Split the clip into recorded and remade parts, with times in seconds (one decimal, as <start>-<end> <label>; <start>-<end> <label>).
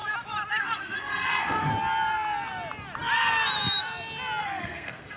0.0-0.6 recorded; 0.6-1.7 remade; 1.7-4.4 recorded; 4.4-5.2 remade